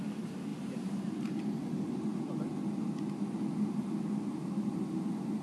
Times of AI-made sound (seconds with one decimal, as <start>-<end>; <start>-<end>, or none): none